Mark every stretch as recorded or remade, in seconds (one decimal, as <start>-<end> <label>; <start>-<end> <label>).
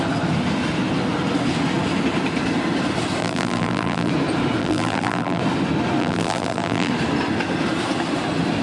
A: 0.0-3.2 recorded; 3.2-4.1 remade; 4.1-4.6 recorded; 4.6-5.4 remade; 5.4-6.0 recorded; 6.0-6.9 remade; 6.9-8.6 recorded